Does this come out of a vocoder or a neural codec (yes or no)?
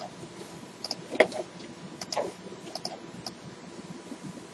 no